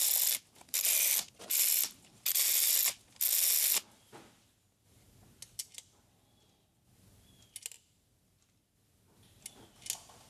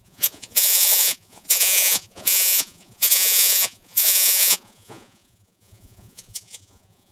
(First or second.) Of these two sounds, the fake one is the second